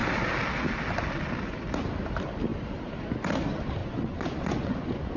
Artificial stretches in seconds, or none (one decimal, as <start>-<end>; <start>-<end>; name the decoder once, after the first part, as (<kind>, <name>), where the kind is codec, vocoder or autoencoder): 3.8-5.2 (vocoder, Vocos)